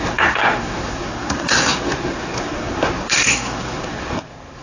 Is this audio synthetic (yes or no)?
yes